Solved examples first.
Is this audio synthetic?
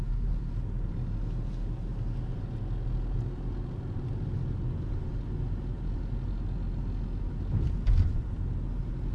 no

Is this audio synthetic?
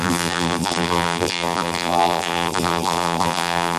yes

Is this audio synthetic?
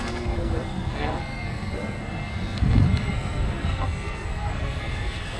yes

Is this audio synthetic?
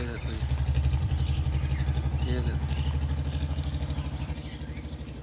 no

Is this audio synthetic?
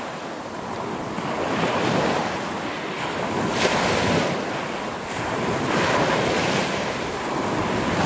no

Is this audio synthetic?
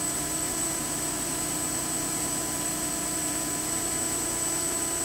yes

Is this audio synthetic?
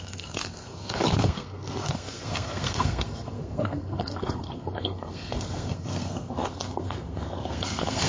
yes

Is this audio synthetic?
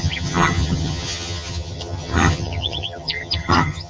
yes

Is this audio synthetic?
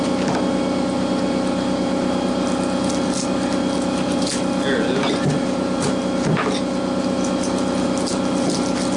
no